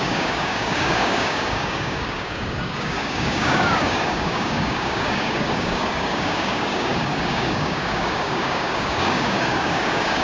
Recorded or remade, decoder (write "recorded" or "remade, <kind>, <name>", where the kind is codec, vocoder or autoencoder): remade, codec, DAC